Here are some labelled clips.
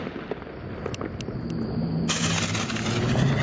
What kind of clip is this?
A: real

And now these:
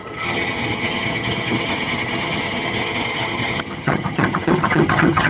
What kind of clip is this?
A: fake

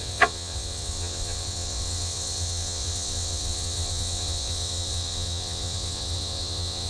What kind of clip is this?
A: fake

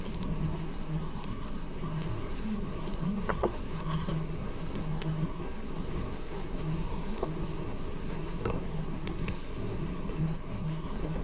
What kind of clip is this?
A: fake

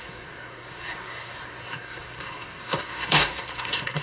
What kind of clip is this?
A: fake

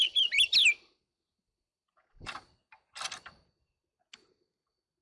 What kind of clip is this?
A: real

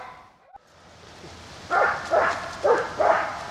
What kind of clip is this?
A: real